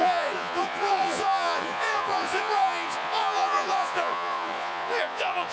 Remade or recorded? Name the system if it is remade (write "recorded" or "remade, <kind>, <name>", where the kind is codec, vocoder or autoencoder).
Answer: remade, vocoder, Vocos